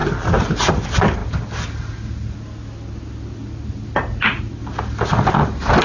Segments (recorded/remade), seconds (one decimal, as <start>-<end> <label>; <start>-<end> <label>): 0.0-5.8 recorded